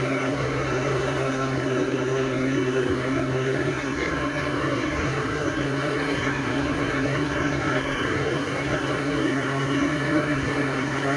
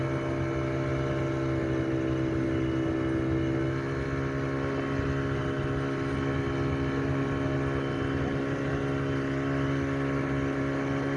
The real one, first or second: second